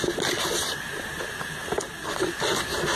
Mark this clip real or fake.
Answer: real